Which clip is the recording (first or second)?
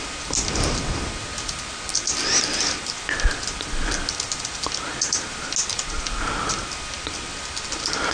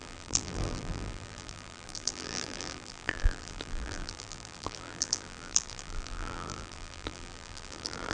first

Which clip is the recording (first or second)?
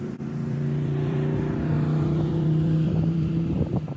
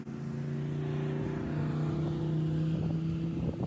second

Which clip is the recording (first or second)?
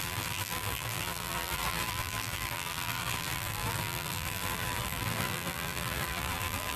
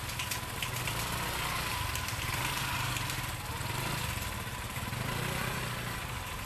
second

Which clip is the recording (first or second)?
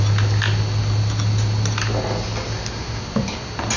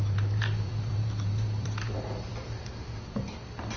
first